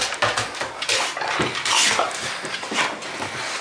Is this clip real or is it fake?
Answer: real